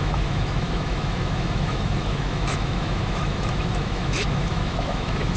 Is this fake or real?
fake